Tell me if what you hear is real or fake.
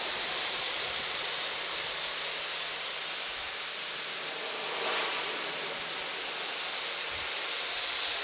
real